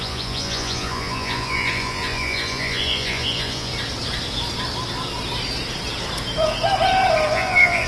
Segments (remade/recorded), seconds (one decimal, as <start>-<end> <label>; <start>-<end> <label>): 0.0-3.7 remade; 3.7-7.3 recorded; 7.3-7.9 remade